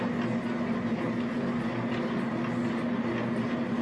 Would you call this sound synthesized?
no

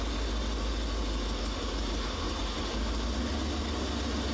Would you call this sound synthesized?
no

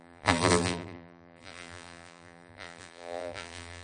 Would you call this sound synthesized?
yes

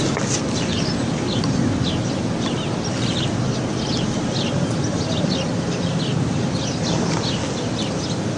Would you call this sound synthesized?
no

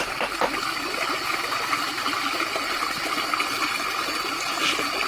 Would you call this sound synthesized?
no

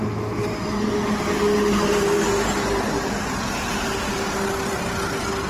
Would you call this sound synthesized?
no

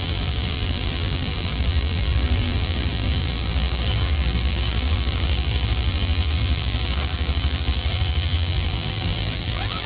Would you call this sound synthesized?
yes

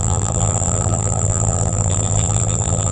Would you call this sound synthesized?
yes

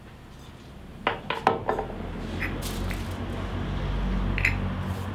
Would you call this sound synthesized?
no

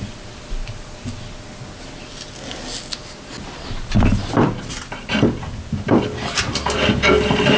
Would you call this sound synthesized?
no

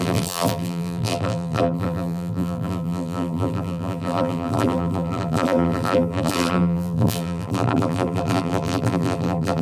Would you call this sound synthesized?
yes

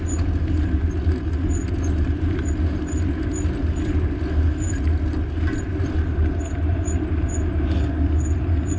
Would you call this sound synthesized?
no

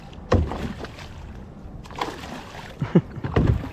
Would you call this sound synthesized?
no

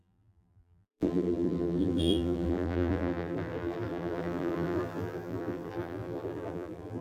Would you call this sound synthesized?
yes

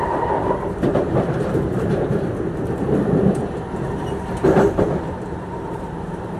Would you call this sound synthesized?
yes